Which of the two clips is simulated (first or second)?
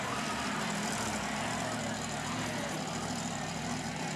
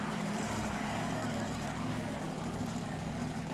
second